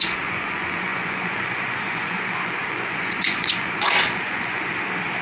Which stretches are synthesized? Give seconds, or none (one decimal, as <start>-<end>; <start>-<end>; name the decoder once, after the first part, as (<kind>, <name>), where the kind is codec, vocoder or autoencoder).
0.0-4.7 (vocoder, Vocos)